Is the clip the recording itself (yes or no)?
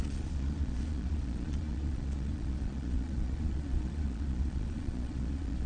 no